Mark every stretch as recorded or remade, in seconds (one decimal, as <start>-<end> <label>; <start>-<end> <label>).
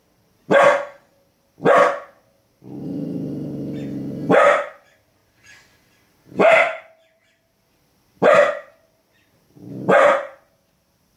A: 0.0-11.2 recorded